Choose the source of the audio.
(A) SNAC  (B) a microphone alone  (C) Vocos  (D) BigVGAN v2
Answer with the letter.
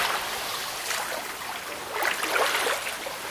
B